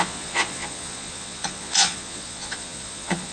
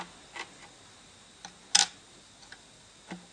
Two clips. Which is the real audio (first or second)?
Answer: second